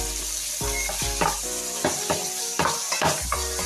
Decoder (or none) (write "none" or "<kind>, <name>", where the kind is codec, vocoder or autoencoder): none